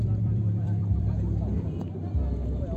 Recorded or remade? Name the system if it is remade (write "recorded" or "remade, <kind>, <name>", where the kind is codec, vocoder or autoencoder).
remade, vocoder, BigVGAN v2